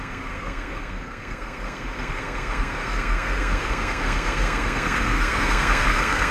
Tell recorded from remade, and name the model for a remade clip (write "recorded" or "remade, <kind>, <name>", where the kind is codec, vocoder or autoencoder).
remade, codec, SNAC